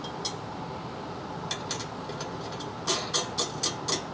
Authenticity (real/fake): real